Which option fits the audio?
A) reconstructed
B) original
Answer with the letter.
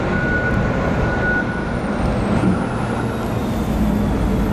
B